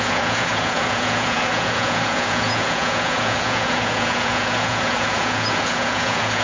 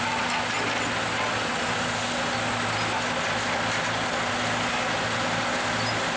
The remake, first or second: first